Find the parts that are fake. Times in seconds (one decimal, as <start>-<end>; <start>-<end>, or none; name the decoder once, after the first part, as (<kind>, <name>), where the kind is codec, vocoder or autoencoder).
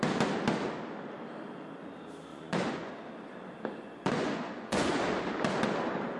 2.3-2.9 (vocoder, Vocos); 3.8-5.0